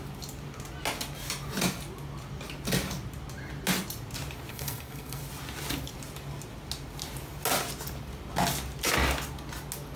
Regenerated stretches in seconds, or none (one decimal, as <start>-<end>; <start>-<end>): 4.5-5.2